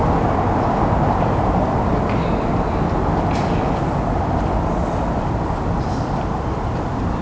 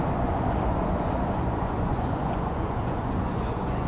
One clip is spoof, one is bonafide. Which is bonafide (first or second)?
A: first